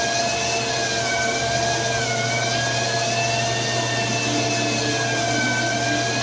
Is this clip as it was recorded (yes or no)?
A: yes